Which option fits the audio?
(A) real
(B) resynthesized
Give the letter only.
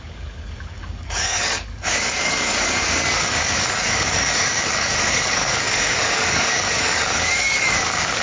B